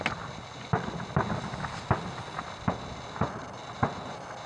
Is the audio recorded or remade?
recorded